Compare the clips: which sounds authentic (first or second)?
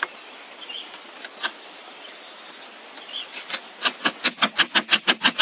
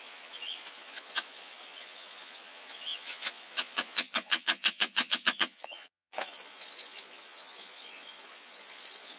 first